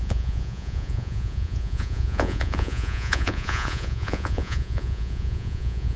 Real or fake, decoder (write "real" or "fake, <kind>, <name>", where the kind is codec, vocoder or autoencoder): fake, vocoder, Vocos